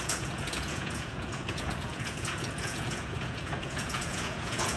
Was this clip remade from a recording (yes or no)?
yes